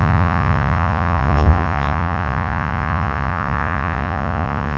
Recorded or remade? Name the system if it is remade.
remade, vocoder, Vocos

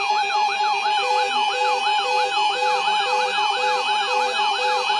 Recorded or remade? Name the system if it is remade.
recorded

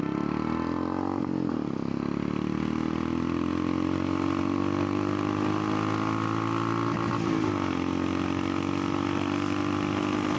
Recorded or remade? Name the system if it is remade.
recorded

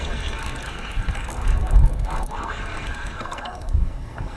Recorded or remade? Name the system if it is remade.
remade, codec, SNAC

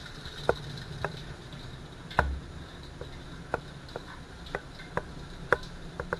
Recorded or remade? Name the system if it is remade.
recorded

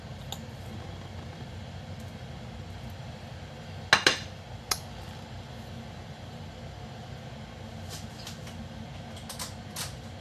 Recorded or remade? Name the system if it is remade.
recorded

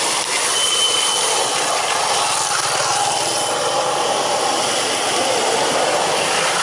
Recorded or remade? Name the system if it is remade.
recorded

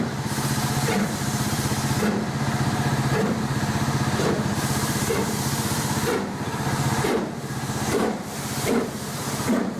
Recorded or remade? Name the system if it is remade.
remade, vocoder, BigVGAN v2